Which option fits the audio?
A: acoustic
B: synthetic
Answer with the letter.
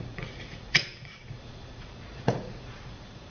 B